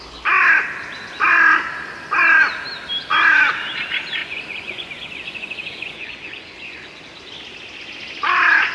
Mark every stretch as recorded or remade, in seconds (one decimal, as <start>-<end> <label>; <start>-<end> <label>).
0.0-4.2 recorded; 4.2-7.0 remade; 7.0-8.7 recorded